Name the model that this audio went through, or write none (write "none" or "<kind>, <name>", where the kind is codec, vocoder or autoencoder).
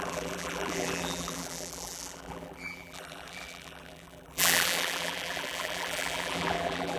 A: vocoder, BigVGAN v2